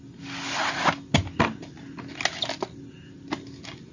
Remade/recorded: recorded